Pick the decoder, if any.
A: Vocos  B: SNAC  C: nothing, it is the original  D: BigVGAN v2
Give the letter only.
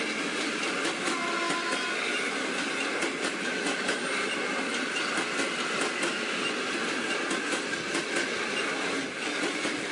C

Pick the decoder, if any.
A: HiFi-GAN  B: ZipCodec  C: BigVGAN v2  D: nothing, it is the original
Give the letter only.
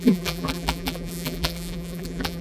C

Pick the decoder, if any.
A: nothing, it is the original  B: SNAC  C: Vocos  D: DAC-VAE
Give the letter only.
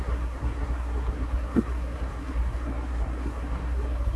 B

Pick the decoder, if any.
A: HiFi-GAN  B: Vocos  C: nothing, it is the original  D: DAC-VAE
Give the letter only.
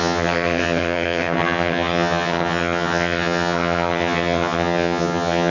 A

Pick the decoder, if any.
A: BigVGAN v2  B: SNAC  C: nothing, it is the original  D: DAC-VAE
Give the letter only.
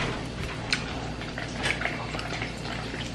C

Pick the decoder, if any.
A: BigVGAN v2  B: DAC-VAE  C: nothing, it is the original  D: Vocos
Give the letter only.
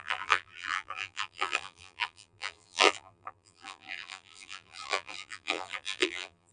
A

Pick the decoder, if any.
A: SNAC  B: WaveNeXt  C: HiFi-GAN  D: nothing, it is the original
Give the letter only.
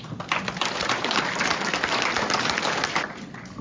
D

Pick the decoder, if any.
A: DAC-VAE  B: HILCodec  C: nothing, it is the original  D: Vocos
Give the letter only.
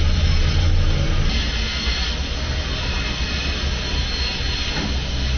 C